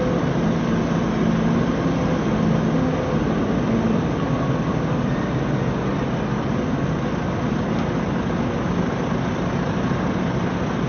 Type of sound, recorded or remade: recorded